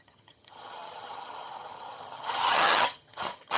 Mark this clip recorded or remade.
remade